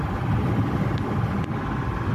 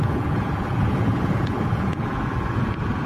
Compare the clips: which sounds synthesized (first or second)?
second